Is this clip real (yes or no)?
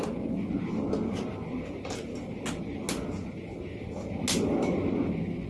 yes